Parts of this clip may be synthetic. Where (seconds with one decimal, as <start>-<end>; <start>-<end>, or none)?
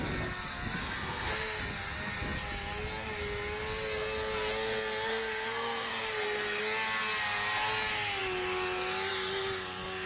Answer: 0.8-1.6; 5.1-6.6